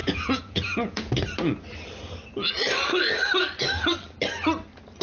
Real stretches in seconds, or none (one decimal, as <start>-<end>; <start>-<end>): 1.1-5.0